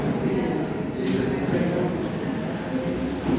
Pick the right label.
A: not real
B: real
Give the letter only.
B